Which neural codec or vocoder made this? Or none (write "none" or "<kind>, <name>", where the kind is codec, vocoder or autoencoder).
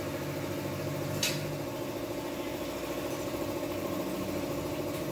none